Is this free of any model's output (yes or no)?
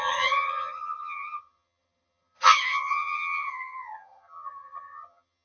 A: no